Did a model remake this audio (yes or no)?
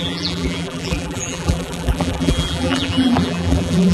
yes